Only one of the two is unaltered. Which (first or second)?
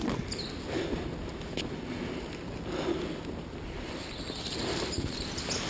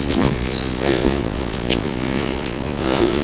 first